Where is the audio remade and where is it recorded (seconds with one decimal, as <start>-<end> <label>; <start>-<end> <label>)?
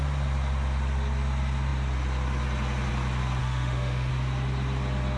0.0-3.4 recorded; 3.4-4.1 remade; 4.1-5.2 recorded